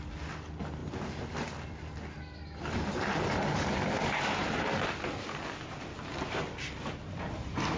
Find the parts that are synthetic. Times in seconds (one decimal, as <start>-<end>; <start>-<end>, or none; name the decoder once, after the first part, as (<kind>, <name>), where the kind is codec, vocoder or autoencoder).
none